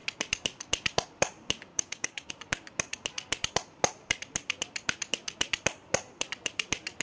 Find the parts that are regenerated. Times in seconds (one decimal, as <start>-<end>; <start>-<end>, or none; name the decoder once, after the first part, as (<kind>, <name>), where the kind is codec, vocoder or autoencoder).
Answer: 1.7-2.3 (codec, DAC)